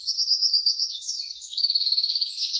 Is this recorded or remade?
remade